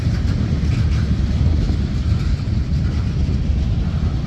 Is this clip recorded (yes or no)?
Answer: no